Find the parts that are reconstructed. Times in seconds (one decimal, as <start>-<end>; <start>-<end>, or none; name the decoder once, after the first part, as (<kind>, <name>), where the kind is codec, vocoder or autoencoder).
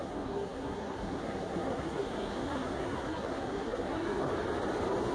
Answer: 0.0-4.3 (codec, SNAC)